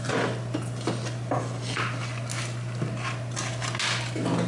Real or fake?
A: real